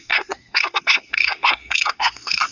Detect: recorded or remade remade